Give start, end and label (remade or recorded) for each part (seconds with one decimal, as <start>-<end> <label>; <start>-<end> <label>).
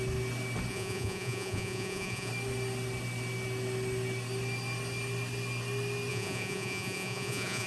0.0-0.7 recorded; 0.7-2.3 remade; 2.3-6.1 recorded; 6.1-7.7 remade